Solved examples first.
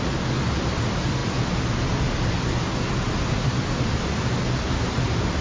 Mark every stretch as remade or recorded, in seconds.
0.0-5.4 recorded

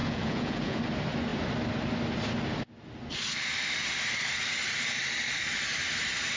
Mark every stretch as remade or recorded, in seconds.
0.0-0.8 remade; 0.8-6.4 recorded

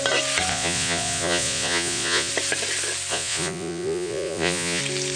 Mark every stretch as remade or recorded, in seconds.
0.0-0.5 recorded; 0.5-2.3 remade; 2.3-3.1 recorded; 3.1-4.8 remade; 4.8-5.2 recorded

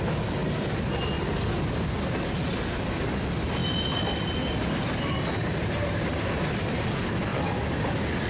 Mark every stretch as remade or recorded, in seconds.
0.0-8.3 recorded